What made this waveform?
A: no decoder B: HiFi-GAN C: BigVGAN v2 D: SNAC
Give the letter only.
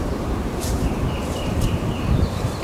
C